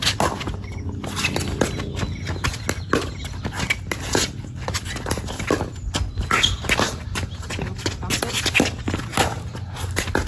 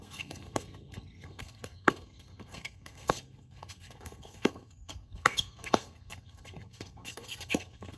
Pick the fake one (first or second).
second